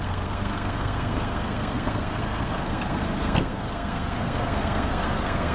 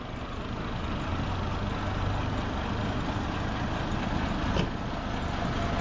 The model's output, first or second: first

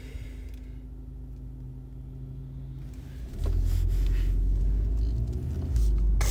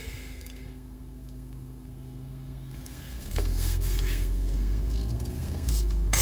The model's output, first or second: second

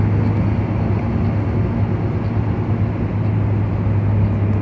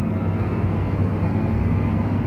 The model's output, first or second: second